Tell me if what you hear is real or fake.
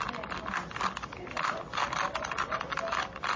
real